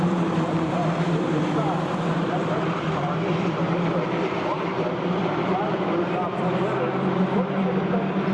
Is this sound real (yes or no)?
no